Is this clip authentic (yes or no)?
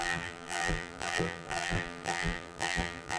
no